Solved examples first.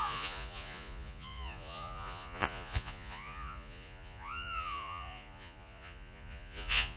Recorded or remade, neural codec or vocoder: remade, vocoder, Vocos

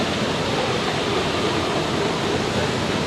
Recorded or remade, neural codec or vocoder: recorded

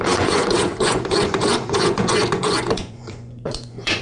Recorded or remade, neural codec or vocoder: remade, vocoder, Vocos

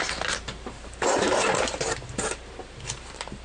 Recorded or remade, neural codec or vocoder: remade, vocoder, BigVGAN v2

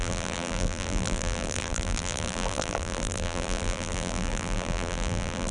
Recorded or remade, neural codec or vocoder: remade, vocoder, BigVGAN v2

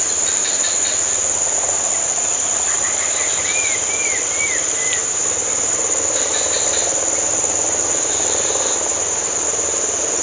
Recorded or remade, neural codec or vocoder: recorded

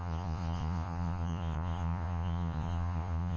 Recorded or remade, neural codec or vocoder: remade, vocoder, Vocos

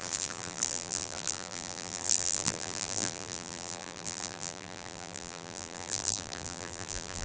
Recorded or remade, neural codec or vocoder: remade, vocoder, BigVGAN v2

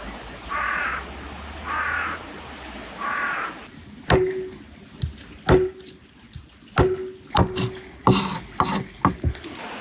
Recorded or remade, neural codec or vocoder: recorded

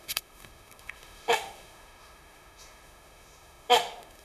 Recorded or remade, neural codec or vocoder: remade, autoencoder, DAC-VAE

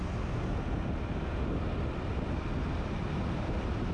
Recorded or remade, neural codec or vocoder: recorded